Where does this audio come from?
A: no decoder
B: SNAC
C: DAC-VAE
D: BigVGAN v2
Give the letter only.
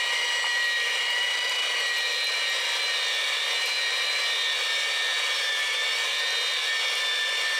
A